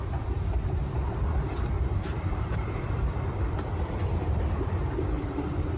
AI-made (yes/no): yes